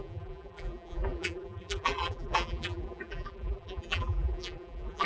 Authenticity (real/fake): fake